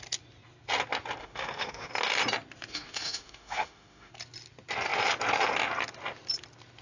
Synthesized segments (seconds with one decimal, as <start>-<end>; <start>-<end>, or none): 1.2-1.9; 2.7-4.1